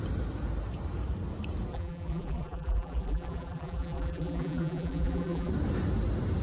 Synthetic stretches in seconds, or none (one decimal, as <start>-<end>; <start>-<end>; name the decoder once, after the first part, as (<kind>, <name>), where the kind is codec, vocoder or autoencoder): 1.7-5.5 (vocoder, BigVGAN v2)